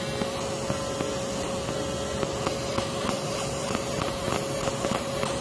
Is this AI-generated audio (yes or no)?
no